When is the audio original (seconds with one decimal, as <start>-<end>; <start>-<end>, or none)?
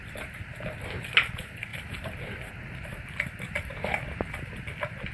0.5-1.7; 2.5-5.1